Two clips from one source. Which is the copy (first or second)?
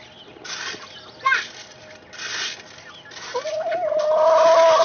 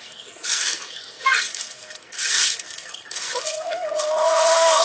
second